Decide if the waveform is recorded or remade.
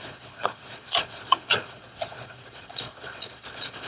remade